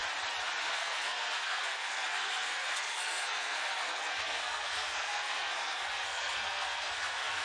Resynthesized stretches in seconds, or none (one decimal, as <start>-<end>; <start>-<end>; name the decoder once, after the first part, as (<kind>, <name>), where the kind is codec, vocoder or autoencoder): 0.6-7.4 (codec, SNAC)